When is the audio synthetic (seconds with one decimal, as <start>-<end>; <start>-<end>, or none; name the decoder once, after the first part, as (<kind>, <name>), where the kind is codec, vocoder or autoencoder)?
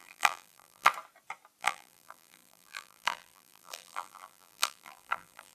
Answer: 0.0-0.9 (vocoder, BigVGAN v2); 1.6-5.5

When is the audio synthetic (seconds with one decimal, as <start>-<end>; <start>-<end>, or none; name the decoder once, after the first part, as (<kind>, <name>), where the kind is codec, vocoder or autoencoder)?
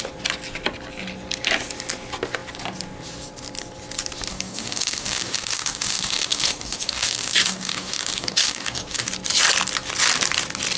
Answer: 4.3-9.1 (codec, DAC)